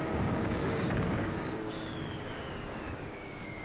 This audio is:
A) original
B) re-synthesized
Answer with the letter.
B